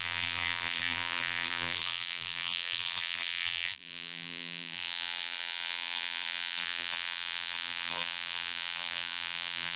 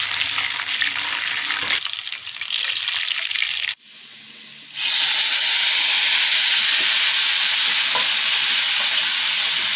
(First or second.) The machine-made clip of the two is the first